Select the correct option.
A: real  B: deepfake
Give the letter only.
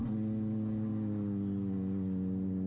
A